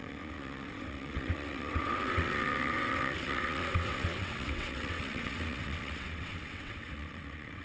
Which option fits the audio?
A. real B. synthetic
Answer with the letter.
B